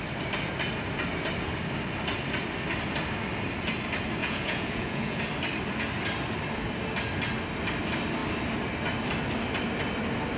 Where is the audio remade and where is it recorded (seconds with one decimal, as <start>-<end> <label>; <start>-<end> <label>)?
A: 0.0-4.2 recorded; 4.2-5.2 remade; 5.2-10.4 recorded